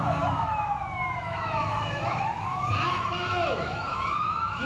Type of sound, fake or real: fake